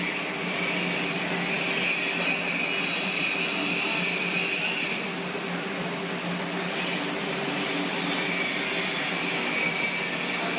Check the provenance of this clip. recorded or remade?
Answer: recorded